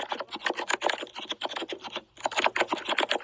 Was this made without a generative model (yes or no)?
yes